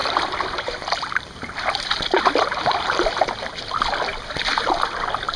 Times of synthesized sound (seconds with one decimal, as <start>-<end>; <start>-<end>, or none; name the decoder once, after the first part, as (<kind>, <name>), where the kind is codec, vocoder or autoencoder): 0.0-3.2 (vocoder, BigVGAN v2); 4.1-5.4